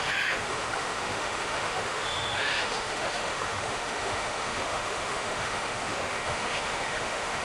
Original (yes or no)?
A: no